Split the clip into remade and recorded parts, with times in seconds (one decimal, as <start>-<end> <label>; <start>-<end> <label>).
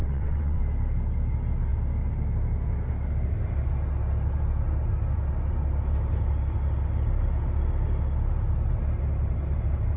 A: 0.0-0.6 remade; 0.6-10.0 recorded